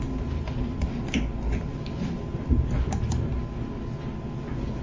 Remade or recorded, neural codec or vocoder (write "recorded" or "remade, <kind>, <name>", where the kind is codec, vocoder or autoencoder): recorded